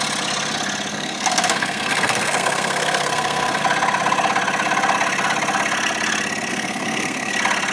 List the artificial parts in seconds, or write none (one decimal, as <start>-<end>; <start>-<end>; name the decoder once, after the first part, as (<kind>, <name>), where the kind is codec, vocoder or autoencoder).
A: 0.9-3.6 (codec, SNAC); 6.5-7.3